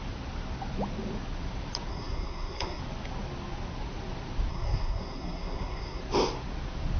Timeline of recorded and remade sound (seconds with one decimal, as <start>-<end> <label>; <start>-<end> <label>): 0.0-1.9 recorded; 1.9-2.8 remade; 2.8-4.5 recorded; 4.5-6.0 remade; 6.0-7.0 recorded